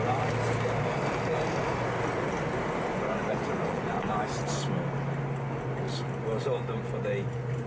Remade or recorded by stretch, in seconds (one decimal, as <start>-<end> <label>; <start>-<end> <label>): 0.0-2.9 recorded; 2.9-4.4 remade; 4.4-7.7 recorded